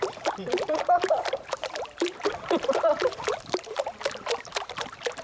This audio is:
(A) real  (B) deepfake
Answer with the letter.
B